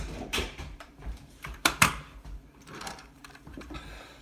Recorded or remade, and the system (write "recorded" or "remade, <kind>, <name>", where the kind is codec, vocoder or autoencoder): remade, vocoder, BigVGAN v2